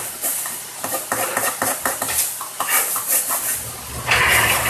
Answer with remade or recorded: recorded